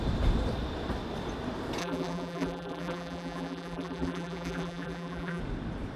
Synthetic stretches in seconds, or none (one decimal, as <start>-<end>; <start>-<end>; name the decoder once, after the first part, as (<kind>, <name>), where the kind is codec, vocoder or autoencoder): 1.8-5.4 (vocoder, BigVGAN v2)